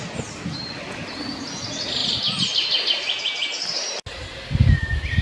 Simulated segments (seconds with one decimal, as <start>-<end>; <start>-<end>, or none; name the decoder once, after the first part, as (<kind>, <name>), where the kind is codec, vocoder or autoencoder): none